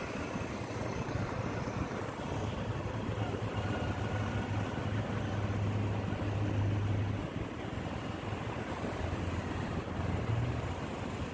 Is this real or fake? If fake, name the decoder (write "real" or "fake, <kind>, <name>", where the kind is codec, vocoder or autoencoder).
real